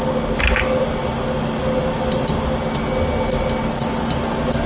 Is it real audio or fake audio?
real